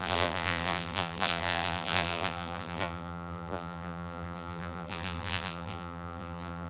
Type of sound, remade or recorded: remade